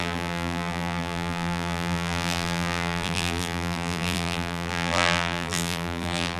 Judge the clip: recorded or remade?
remade